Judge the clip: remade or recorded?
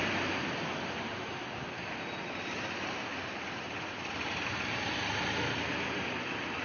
recorded